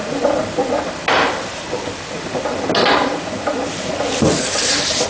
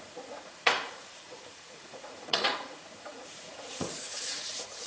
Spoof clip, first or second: second